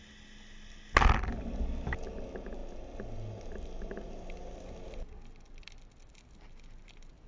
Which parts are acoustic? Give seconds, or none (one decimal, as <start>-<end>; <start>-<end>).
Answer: 0.0-7.3